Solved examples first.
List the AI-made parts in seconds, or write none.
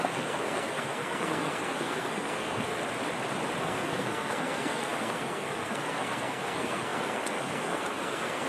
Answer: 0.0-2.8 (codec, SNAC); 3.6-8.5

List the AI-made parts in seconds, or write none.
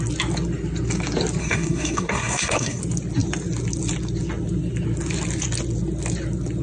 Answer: 1.4-2.8 (codec, SNAC)